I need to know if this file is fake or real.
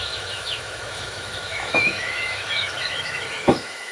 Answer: fake